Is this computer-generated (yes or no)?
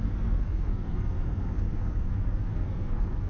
yes